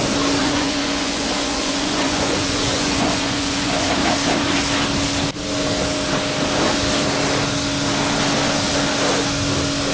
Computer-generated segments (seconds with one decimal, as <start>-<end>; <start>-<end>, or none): 0.4-3.9